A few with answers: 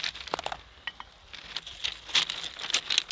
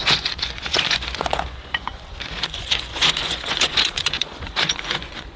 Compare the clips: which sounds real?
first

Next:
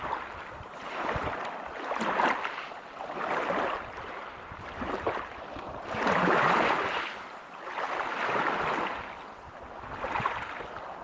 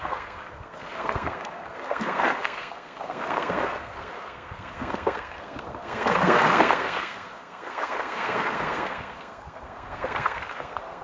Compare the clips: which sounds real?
first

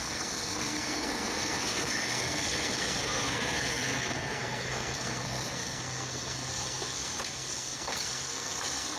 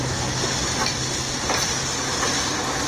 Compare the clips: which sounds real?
second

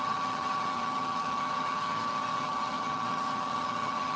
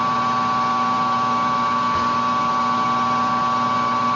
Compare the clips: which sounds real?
second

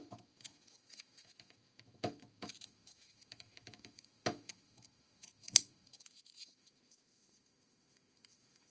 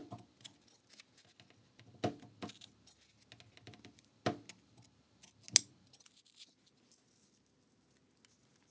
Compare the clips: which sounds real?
second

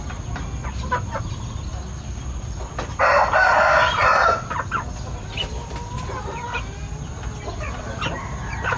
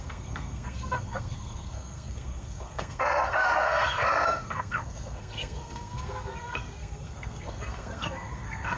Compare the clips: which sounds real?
first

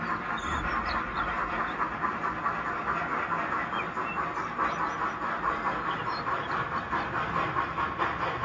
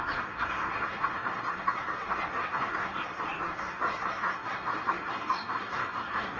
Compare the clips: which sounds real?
first